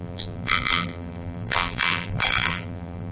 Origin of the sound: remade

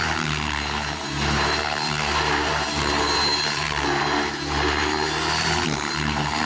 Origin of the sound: remade